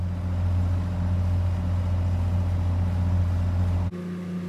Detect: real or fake real